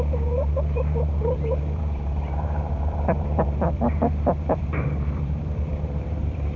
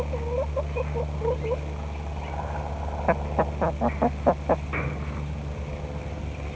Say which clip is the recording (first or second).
second